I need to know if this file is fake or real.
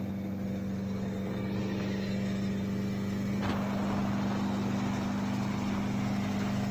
real